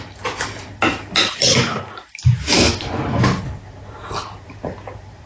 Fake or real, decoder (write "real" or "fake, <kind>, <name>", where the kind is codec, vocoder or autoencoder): real